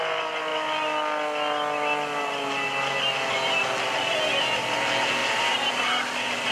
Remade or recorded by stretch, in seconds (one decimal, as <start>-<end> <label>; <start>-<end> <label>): 0.0-6.5 recorded